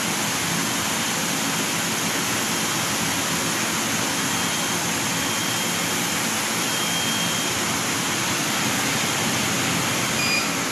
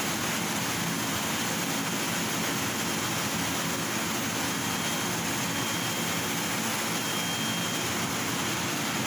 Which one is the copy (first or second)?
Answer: first